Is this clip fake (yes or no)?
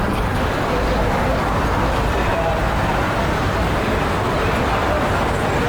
no